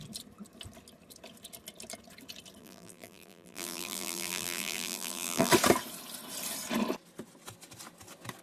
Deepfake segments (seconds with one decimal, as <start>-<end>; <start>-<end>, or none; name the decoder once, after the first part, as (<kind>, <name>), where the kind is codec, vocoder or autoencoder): 2.6-5.5 (vocoder, BigVGAN v2)